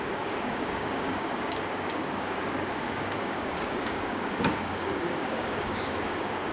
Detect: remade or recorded remade